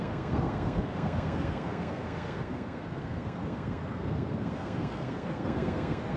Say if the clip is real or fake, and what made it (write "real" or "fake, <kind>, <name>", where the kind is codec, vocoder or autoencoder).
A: fake, codec, SNAC